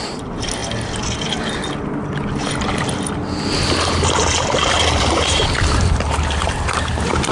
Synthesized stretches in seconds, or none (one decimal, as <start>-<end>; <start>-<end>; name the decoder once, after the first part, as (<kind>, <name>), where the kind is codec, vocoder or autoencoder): 0.0-0.6 (vocoder, BigVGAN v2); 5.0-7.3